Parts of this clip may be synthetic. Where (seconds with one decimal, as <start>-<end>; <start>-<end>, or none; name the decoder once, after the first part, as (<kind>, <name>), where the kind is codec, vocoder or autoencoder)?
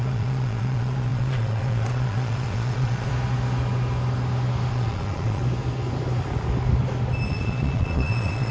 0.0-3.1 (vocoder, Vocos); 4.7-5.4; 7.3-8.5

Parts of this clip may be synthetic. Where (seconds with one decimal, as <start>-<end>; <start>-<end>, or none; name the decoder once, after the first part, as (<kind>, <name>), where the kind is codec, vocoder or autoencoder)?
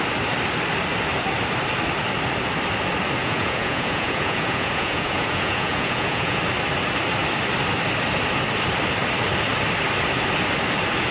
3.2-6.4 (vocoder, Vocos)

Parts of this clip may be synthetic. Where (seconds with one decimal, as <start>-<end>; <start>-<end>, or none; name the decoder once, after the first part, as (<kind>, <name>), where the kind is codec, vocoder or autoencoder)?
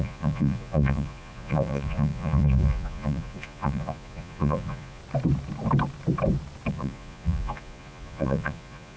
0.0-5.0 (vocoder, Vocos); 6.7-9.0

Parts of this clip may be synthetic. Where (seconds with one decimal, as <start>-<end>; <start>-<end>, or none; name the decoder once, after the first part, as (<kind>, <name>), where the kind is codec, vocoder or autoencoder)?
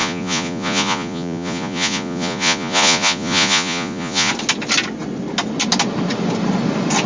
0.0-4.3 (vocoder, Vocos)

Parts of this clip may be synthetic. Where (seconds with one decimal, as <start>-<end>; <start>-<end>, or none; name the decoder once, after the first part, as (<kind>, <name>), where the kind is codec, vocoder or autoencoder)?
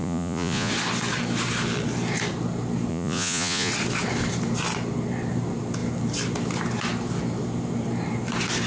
0.0-0.7 (vocoder, Vocos); 2.9-3.7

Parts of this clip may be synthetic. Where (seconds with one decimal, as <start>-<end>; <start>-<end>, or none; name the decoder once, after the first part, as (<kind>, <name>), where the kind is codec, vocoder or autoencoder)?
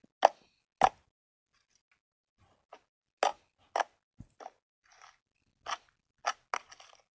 none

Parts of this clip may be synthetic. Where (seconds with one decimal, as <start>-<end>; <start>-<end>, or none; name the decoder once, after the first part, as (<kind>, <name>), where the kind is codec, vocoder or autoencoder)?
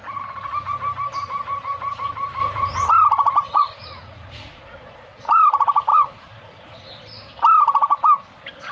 2.4-2.9 (vocoder, Vocos); 3.5-5.4; 5.9-6.9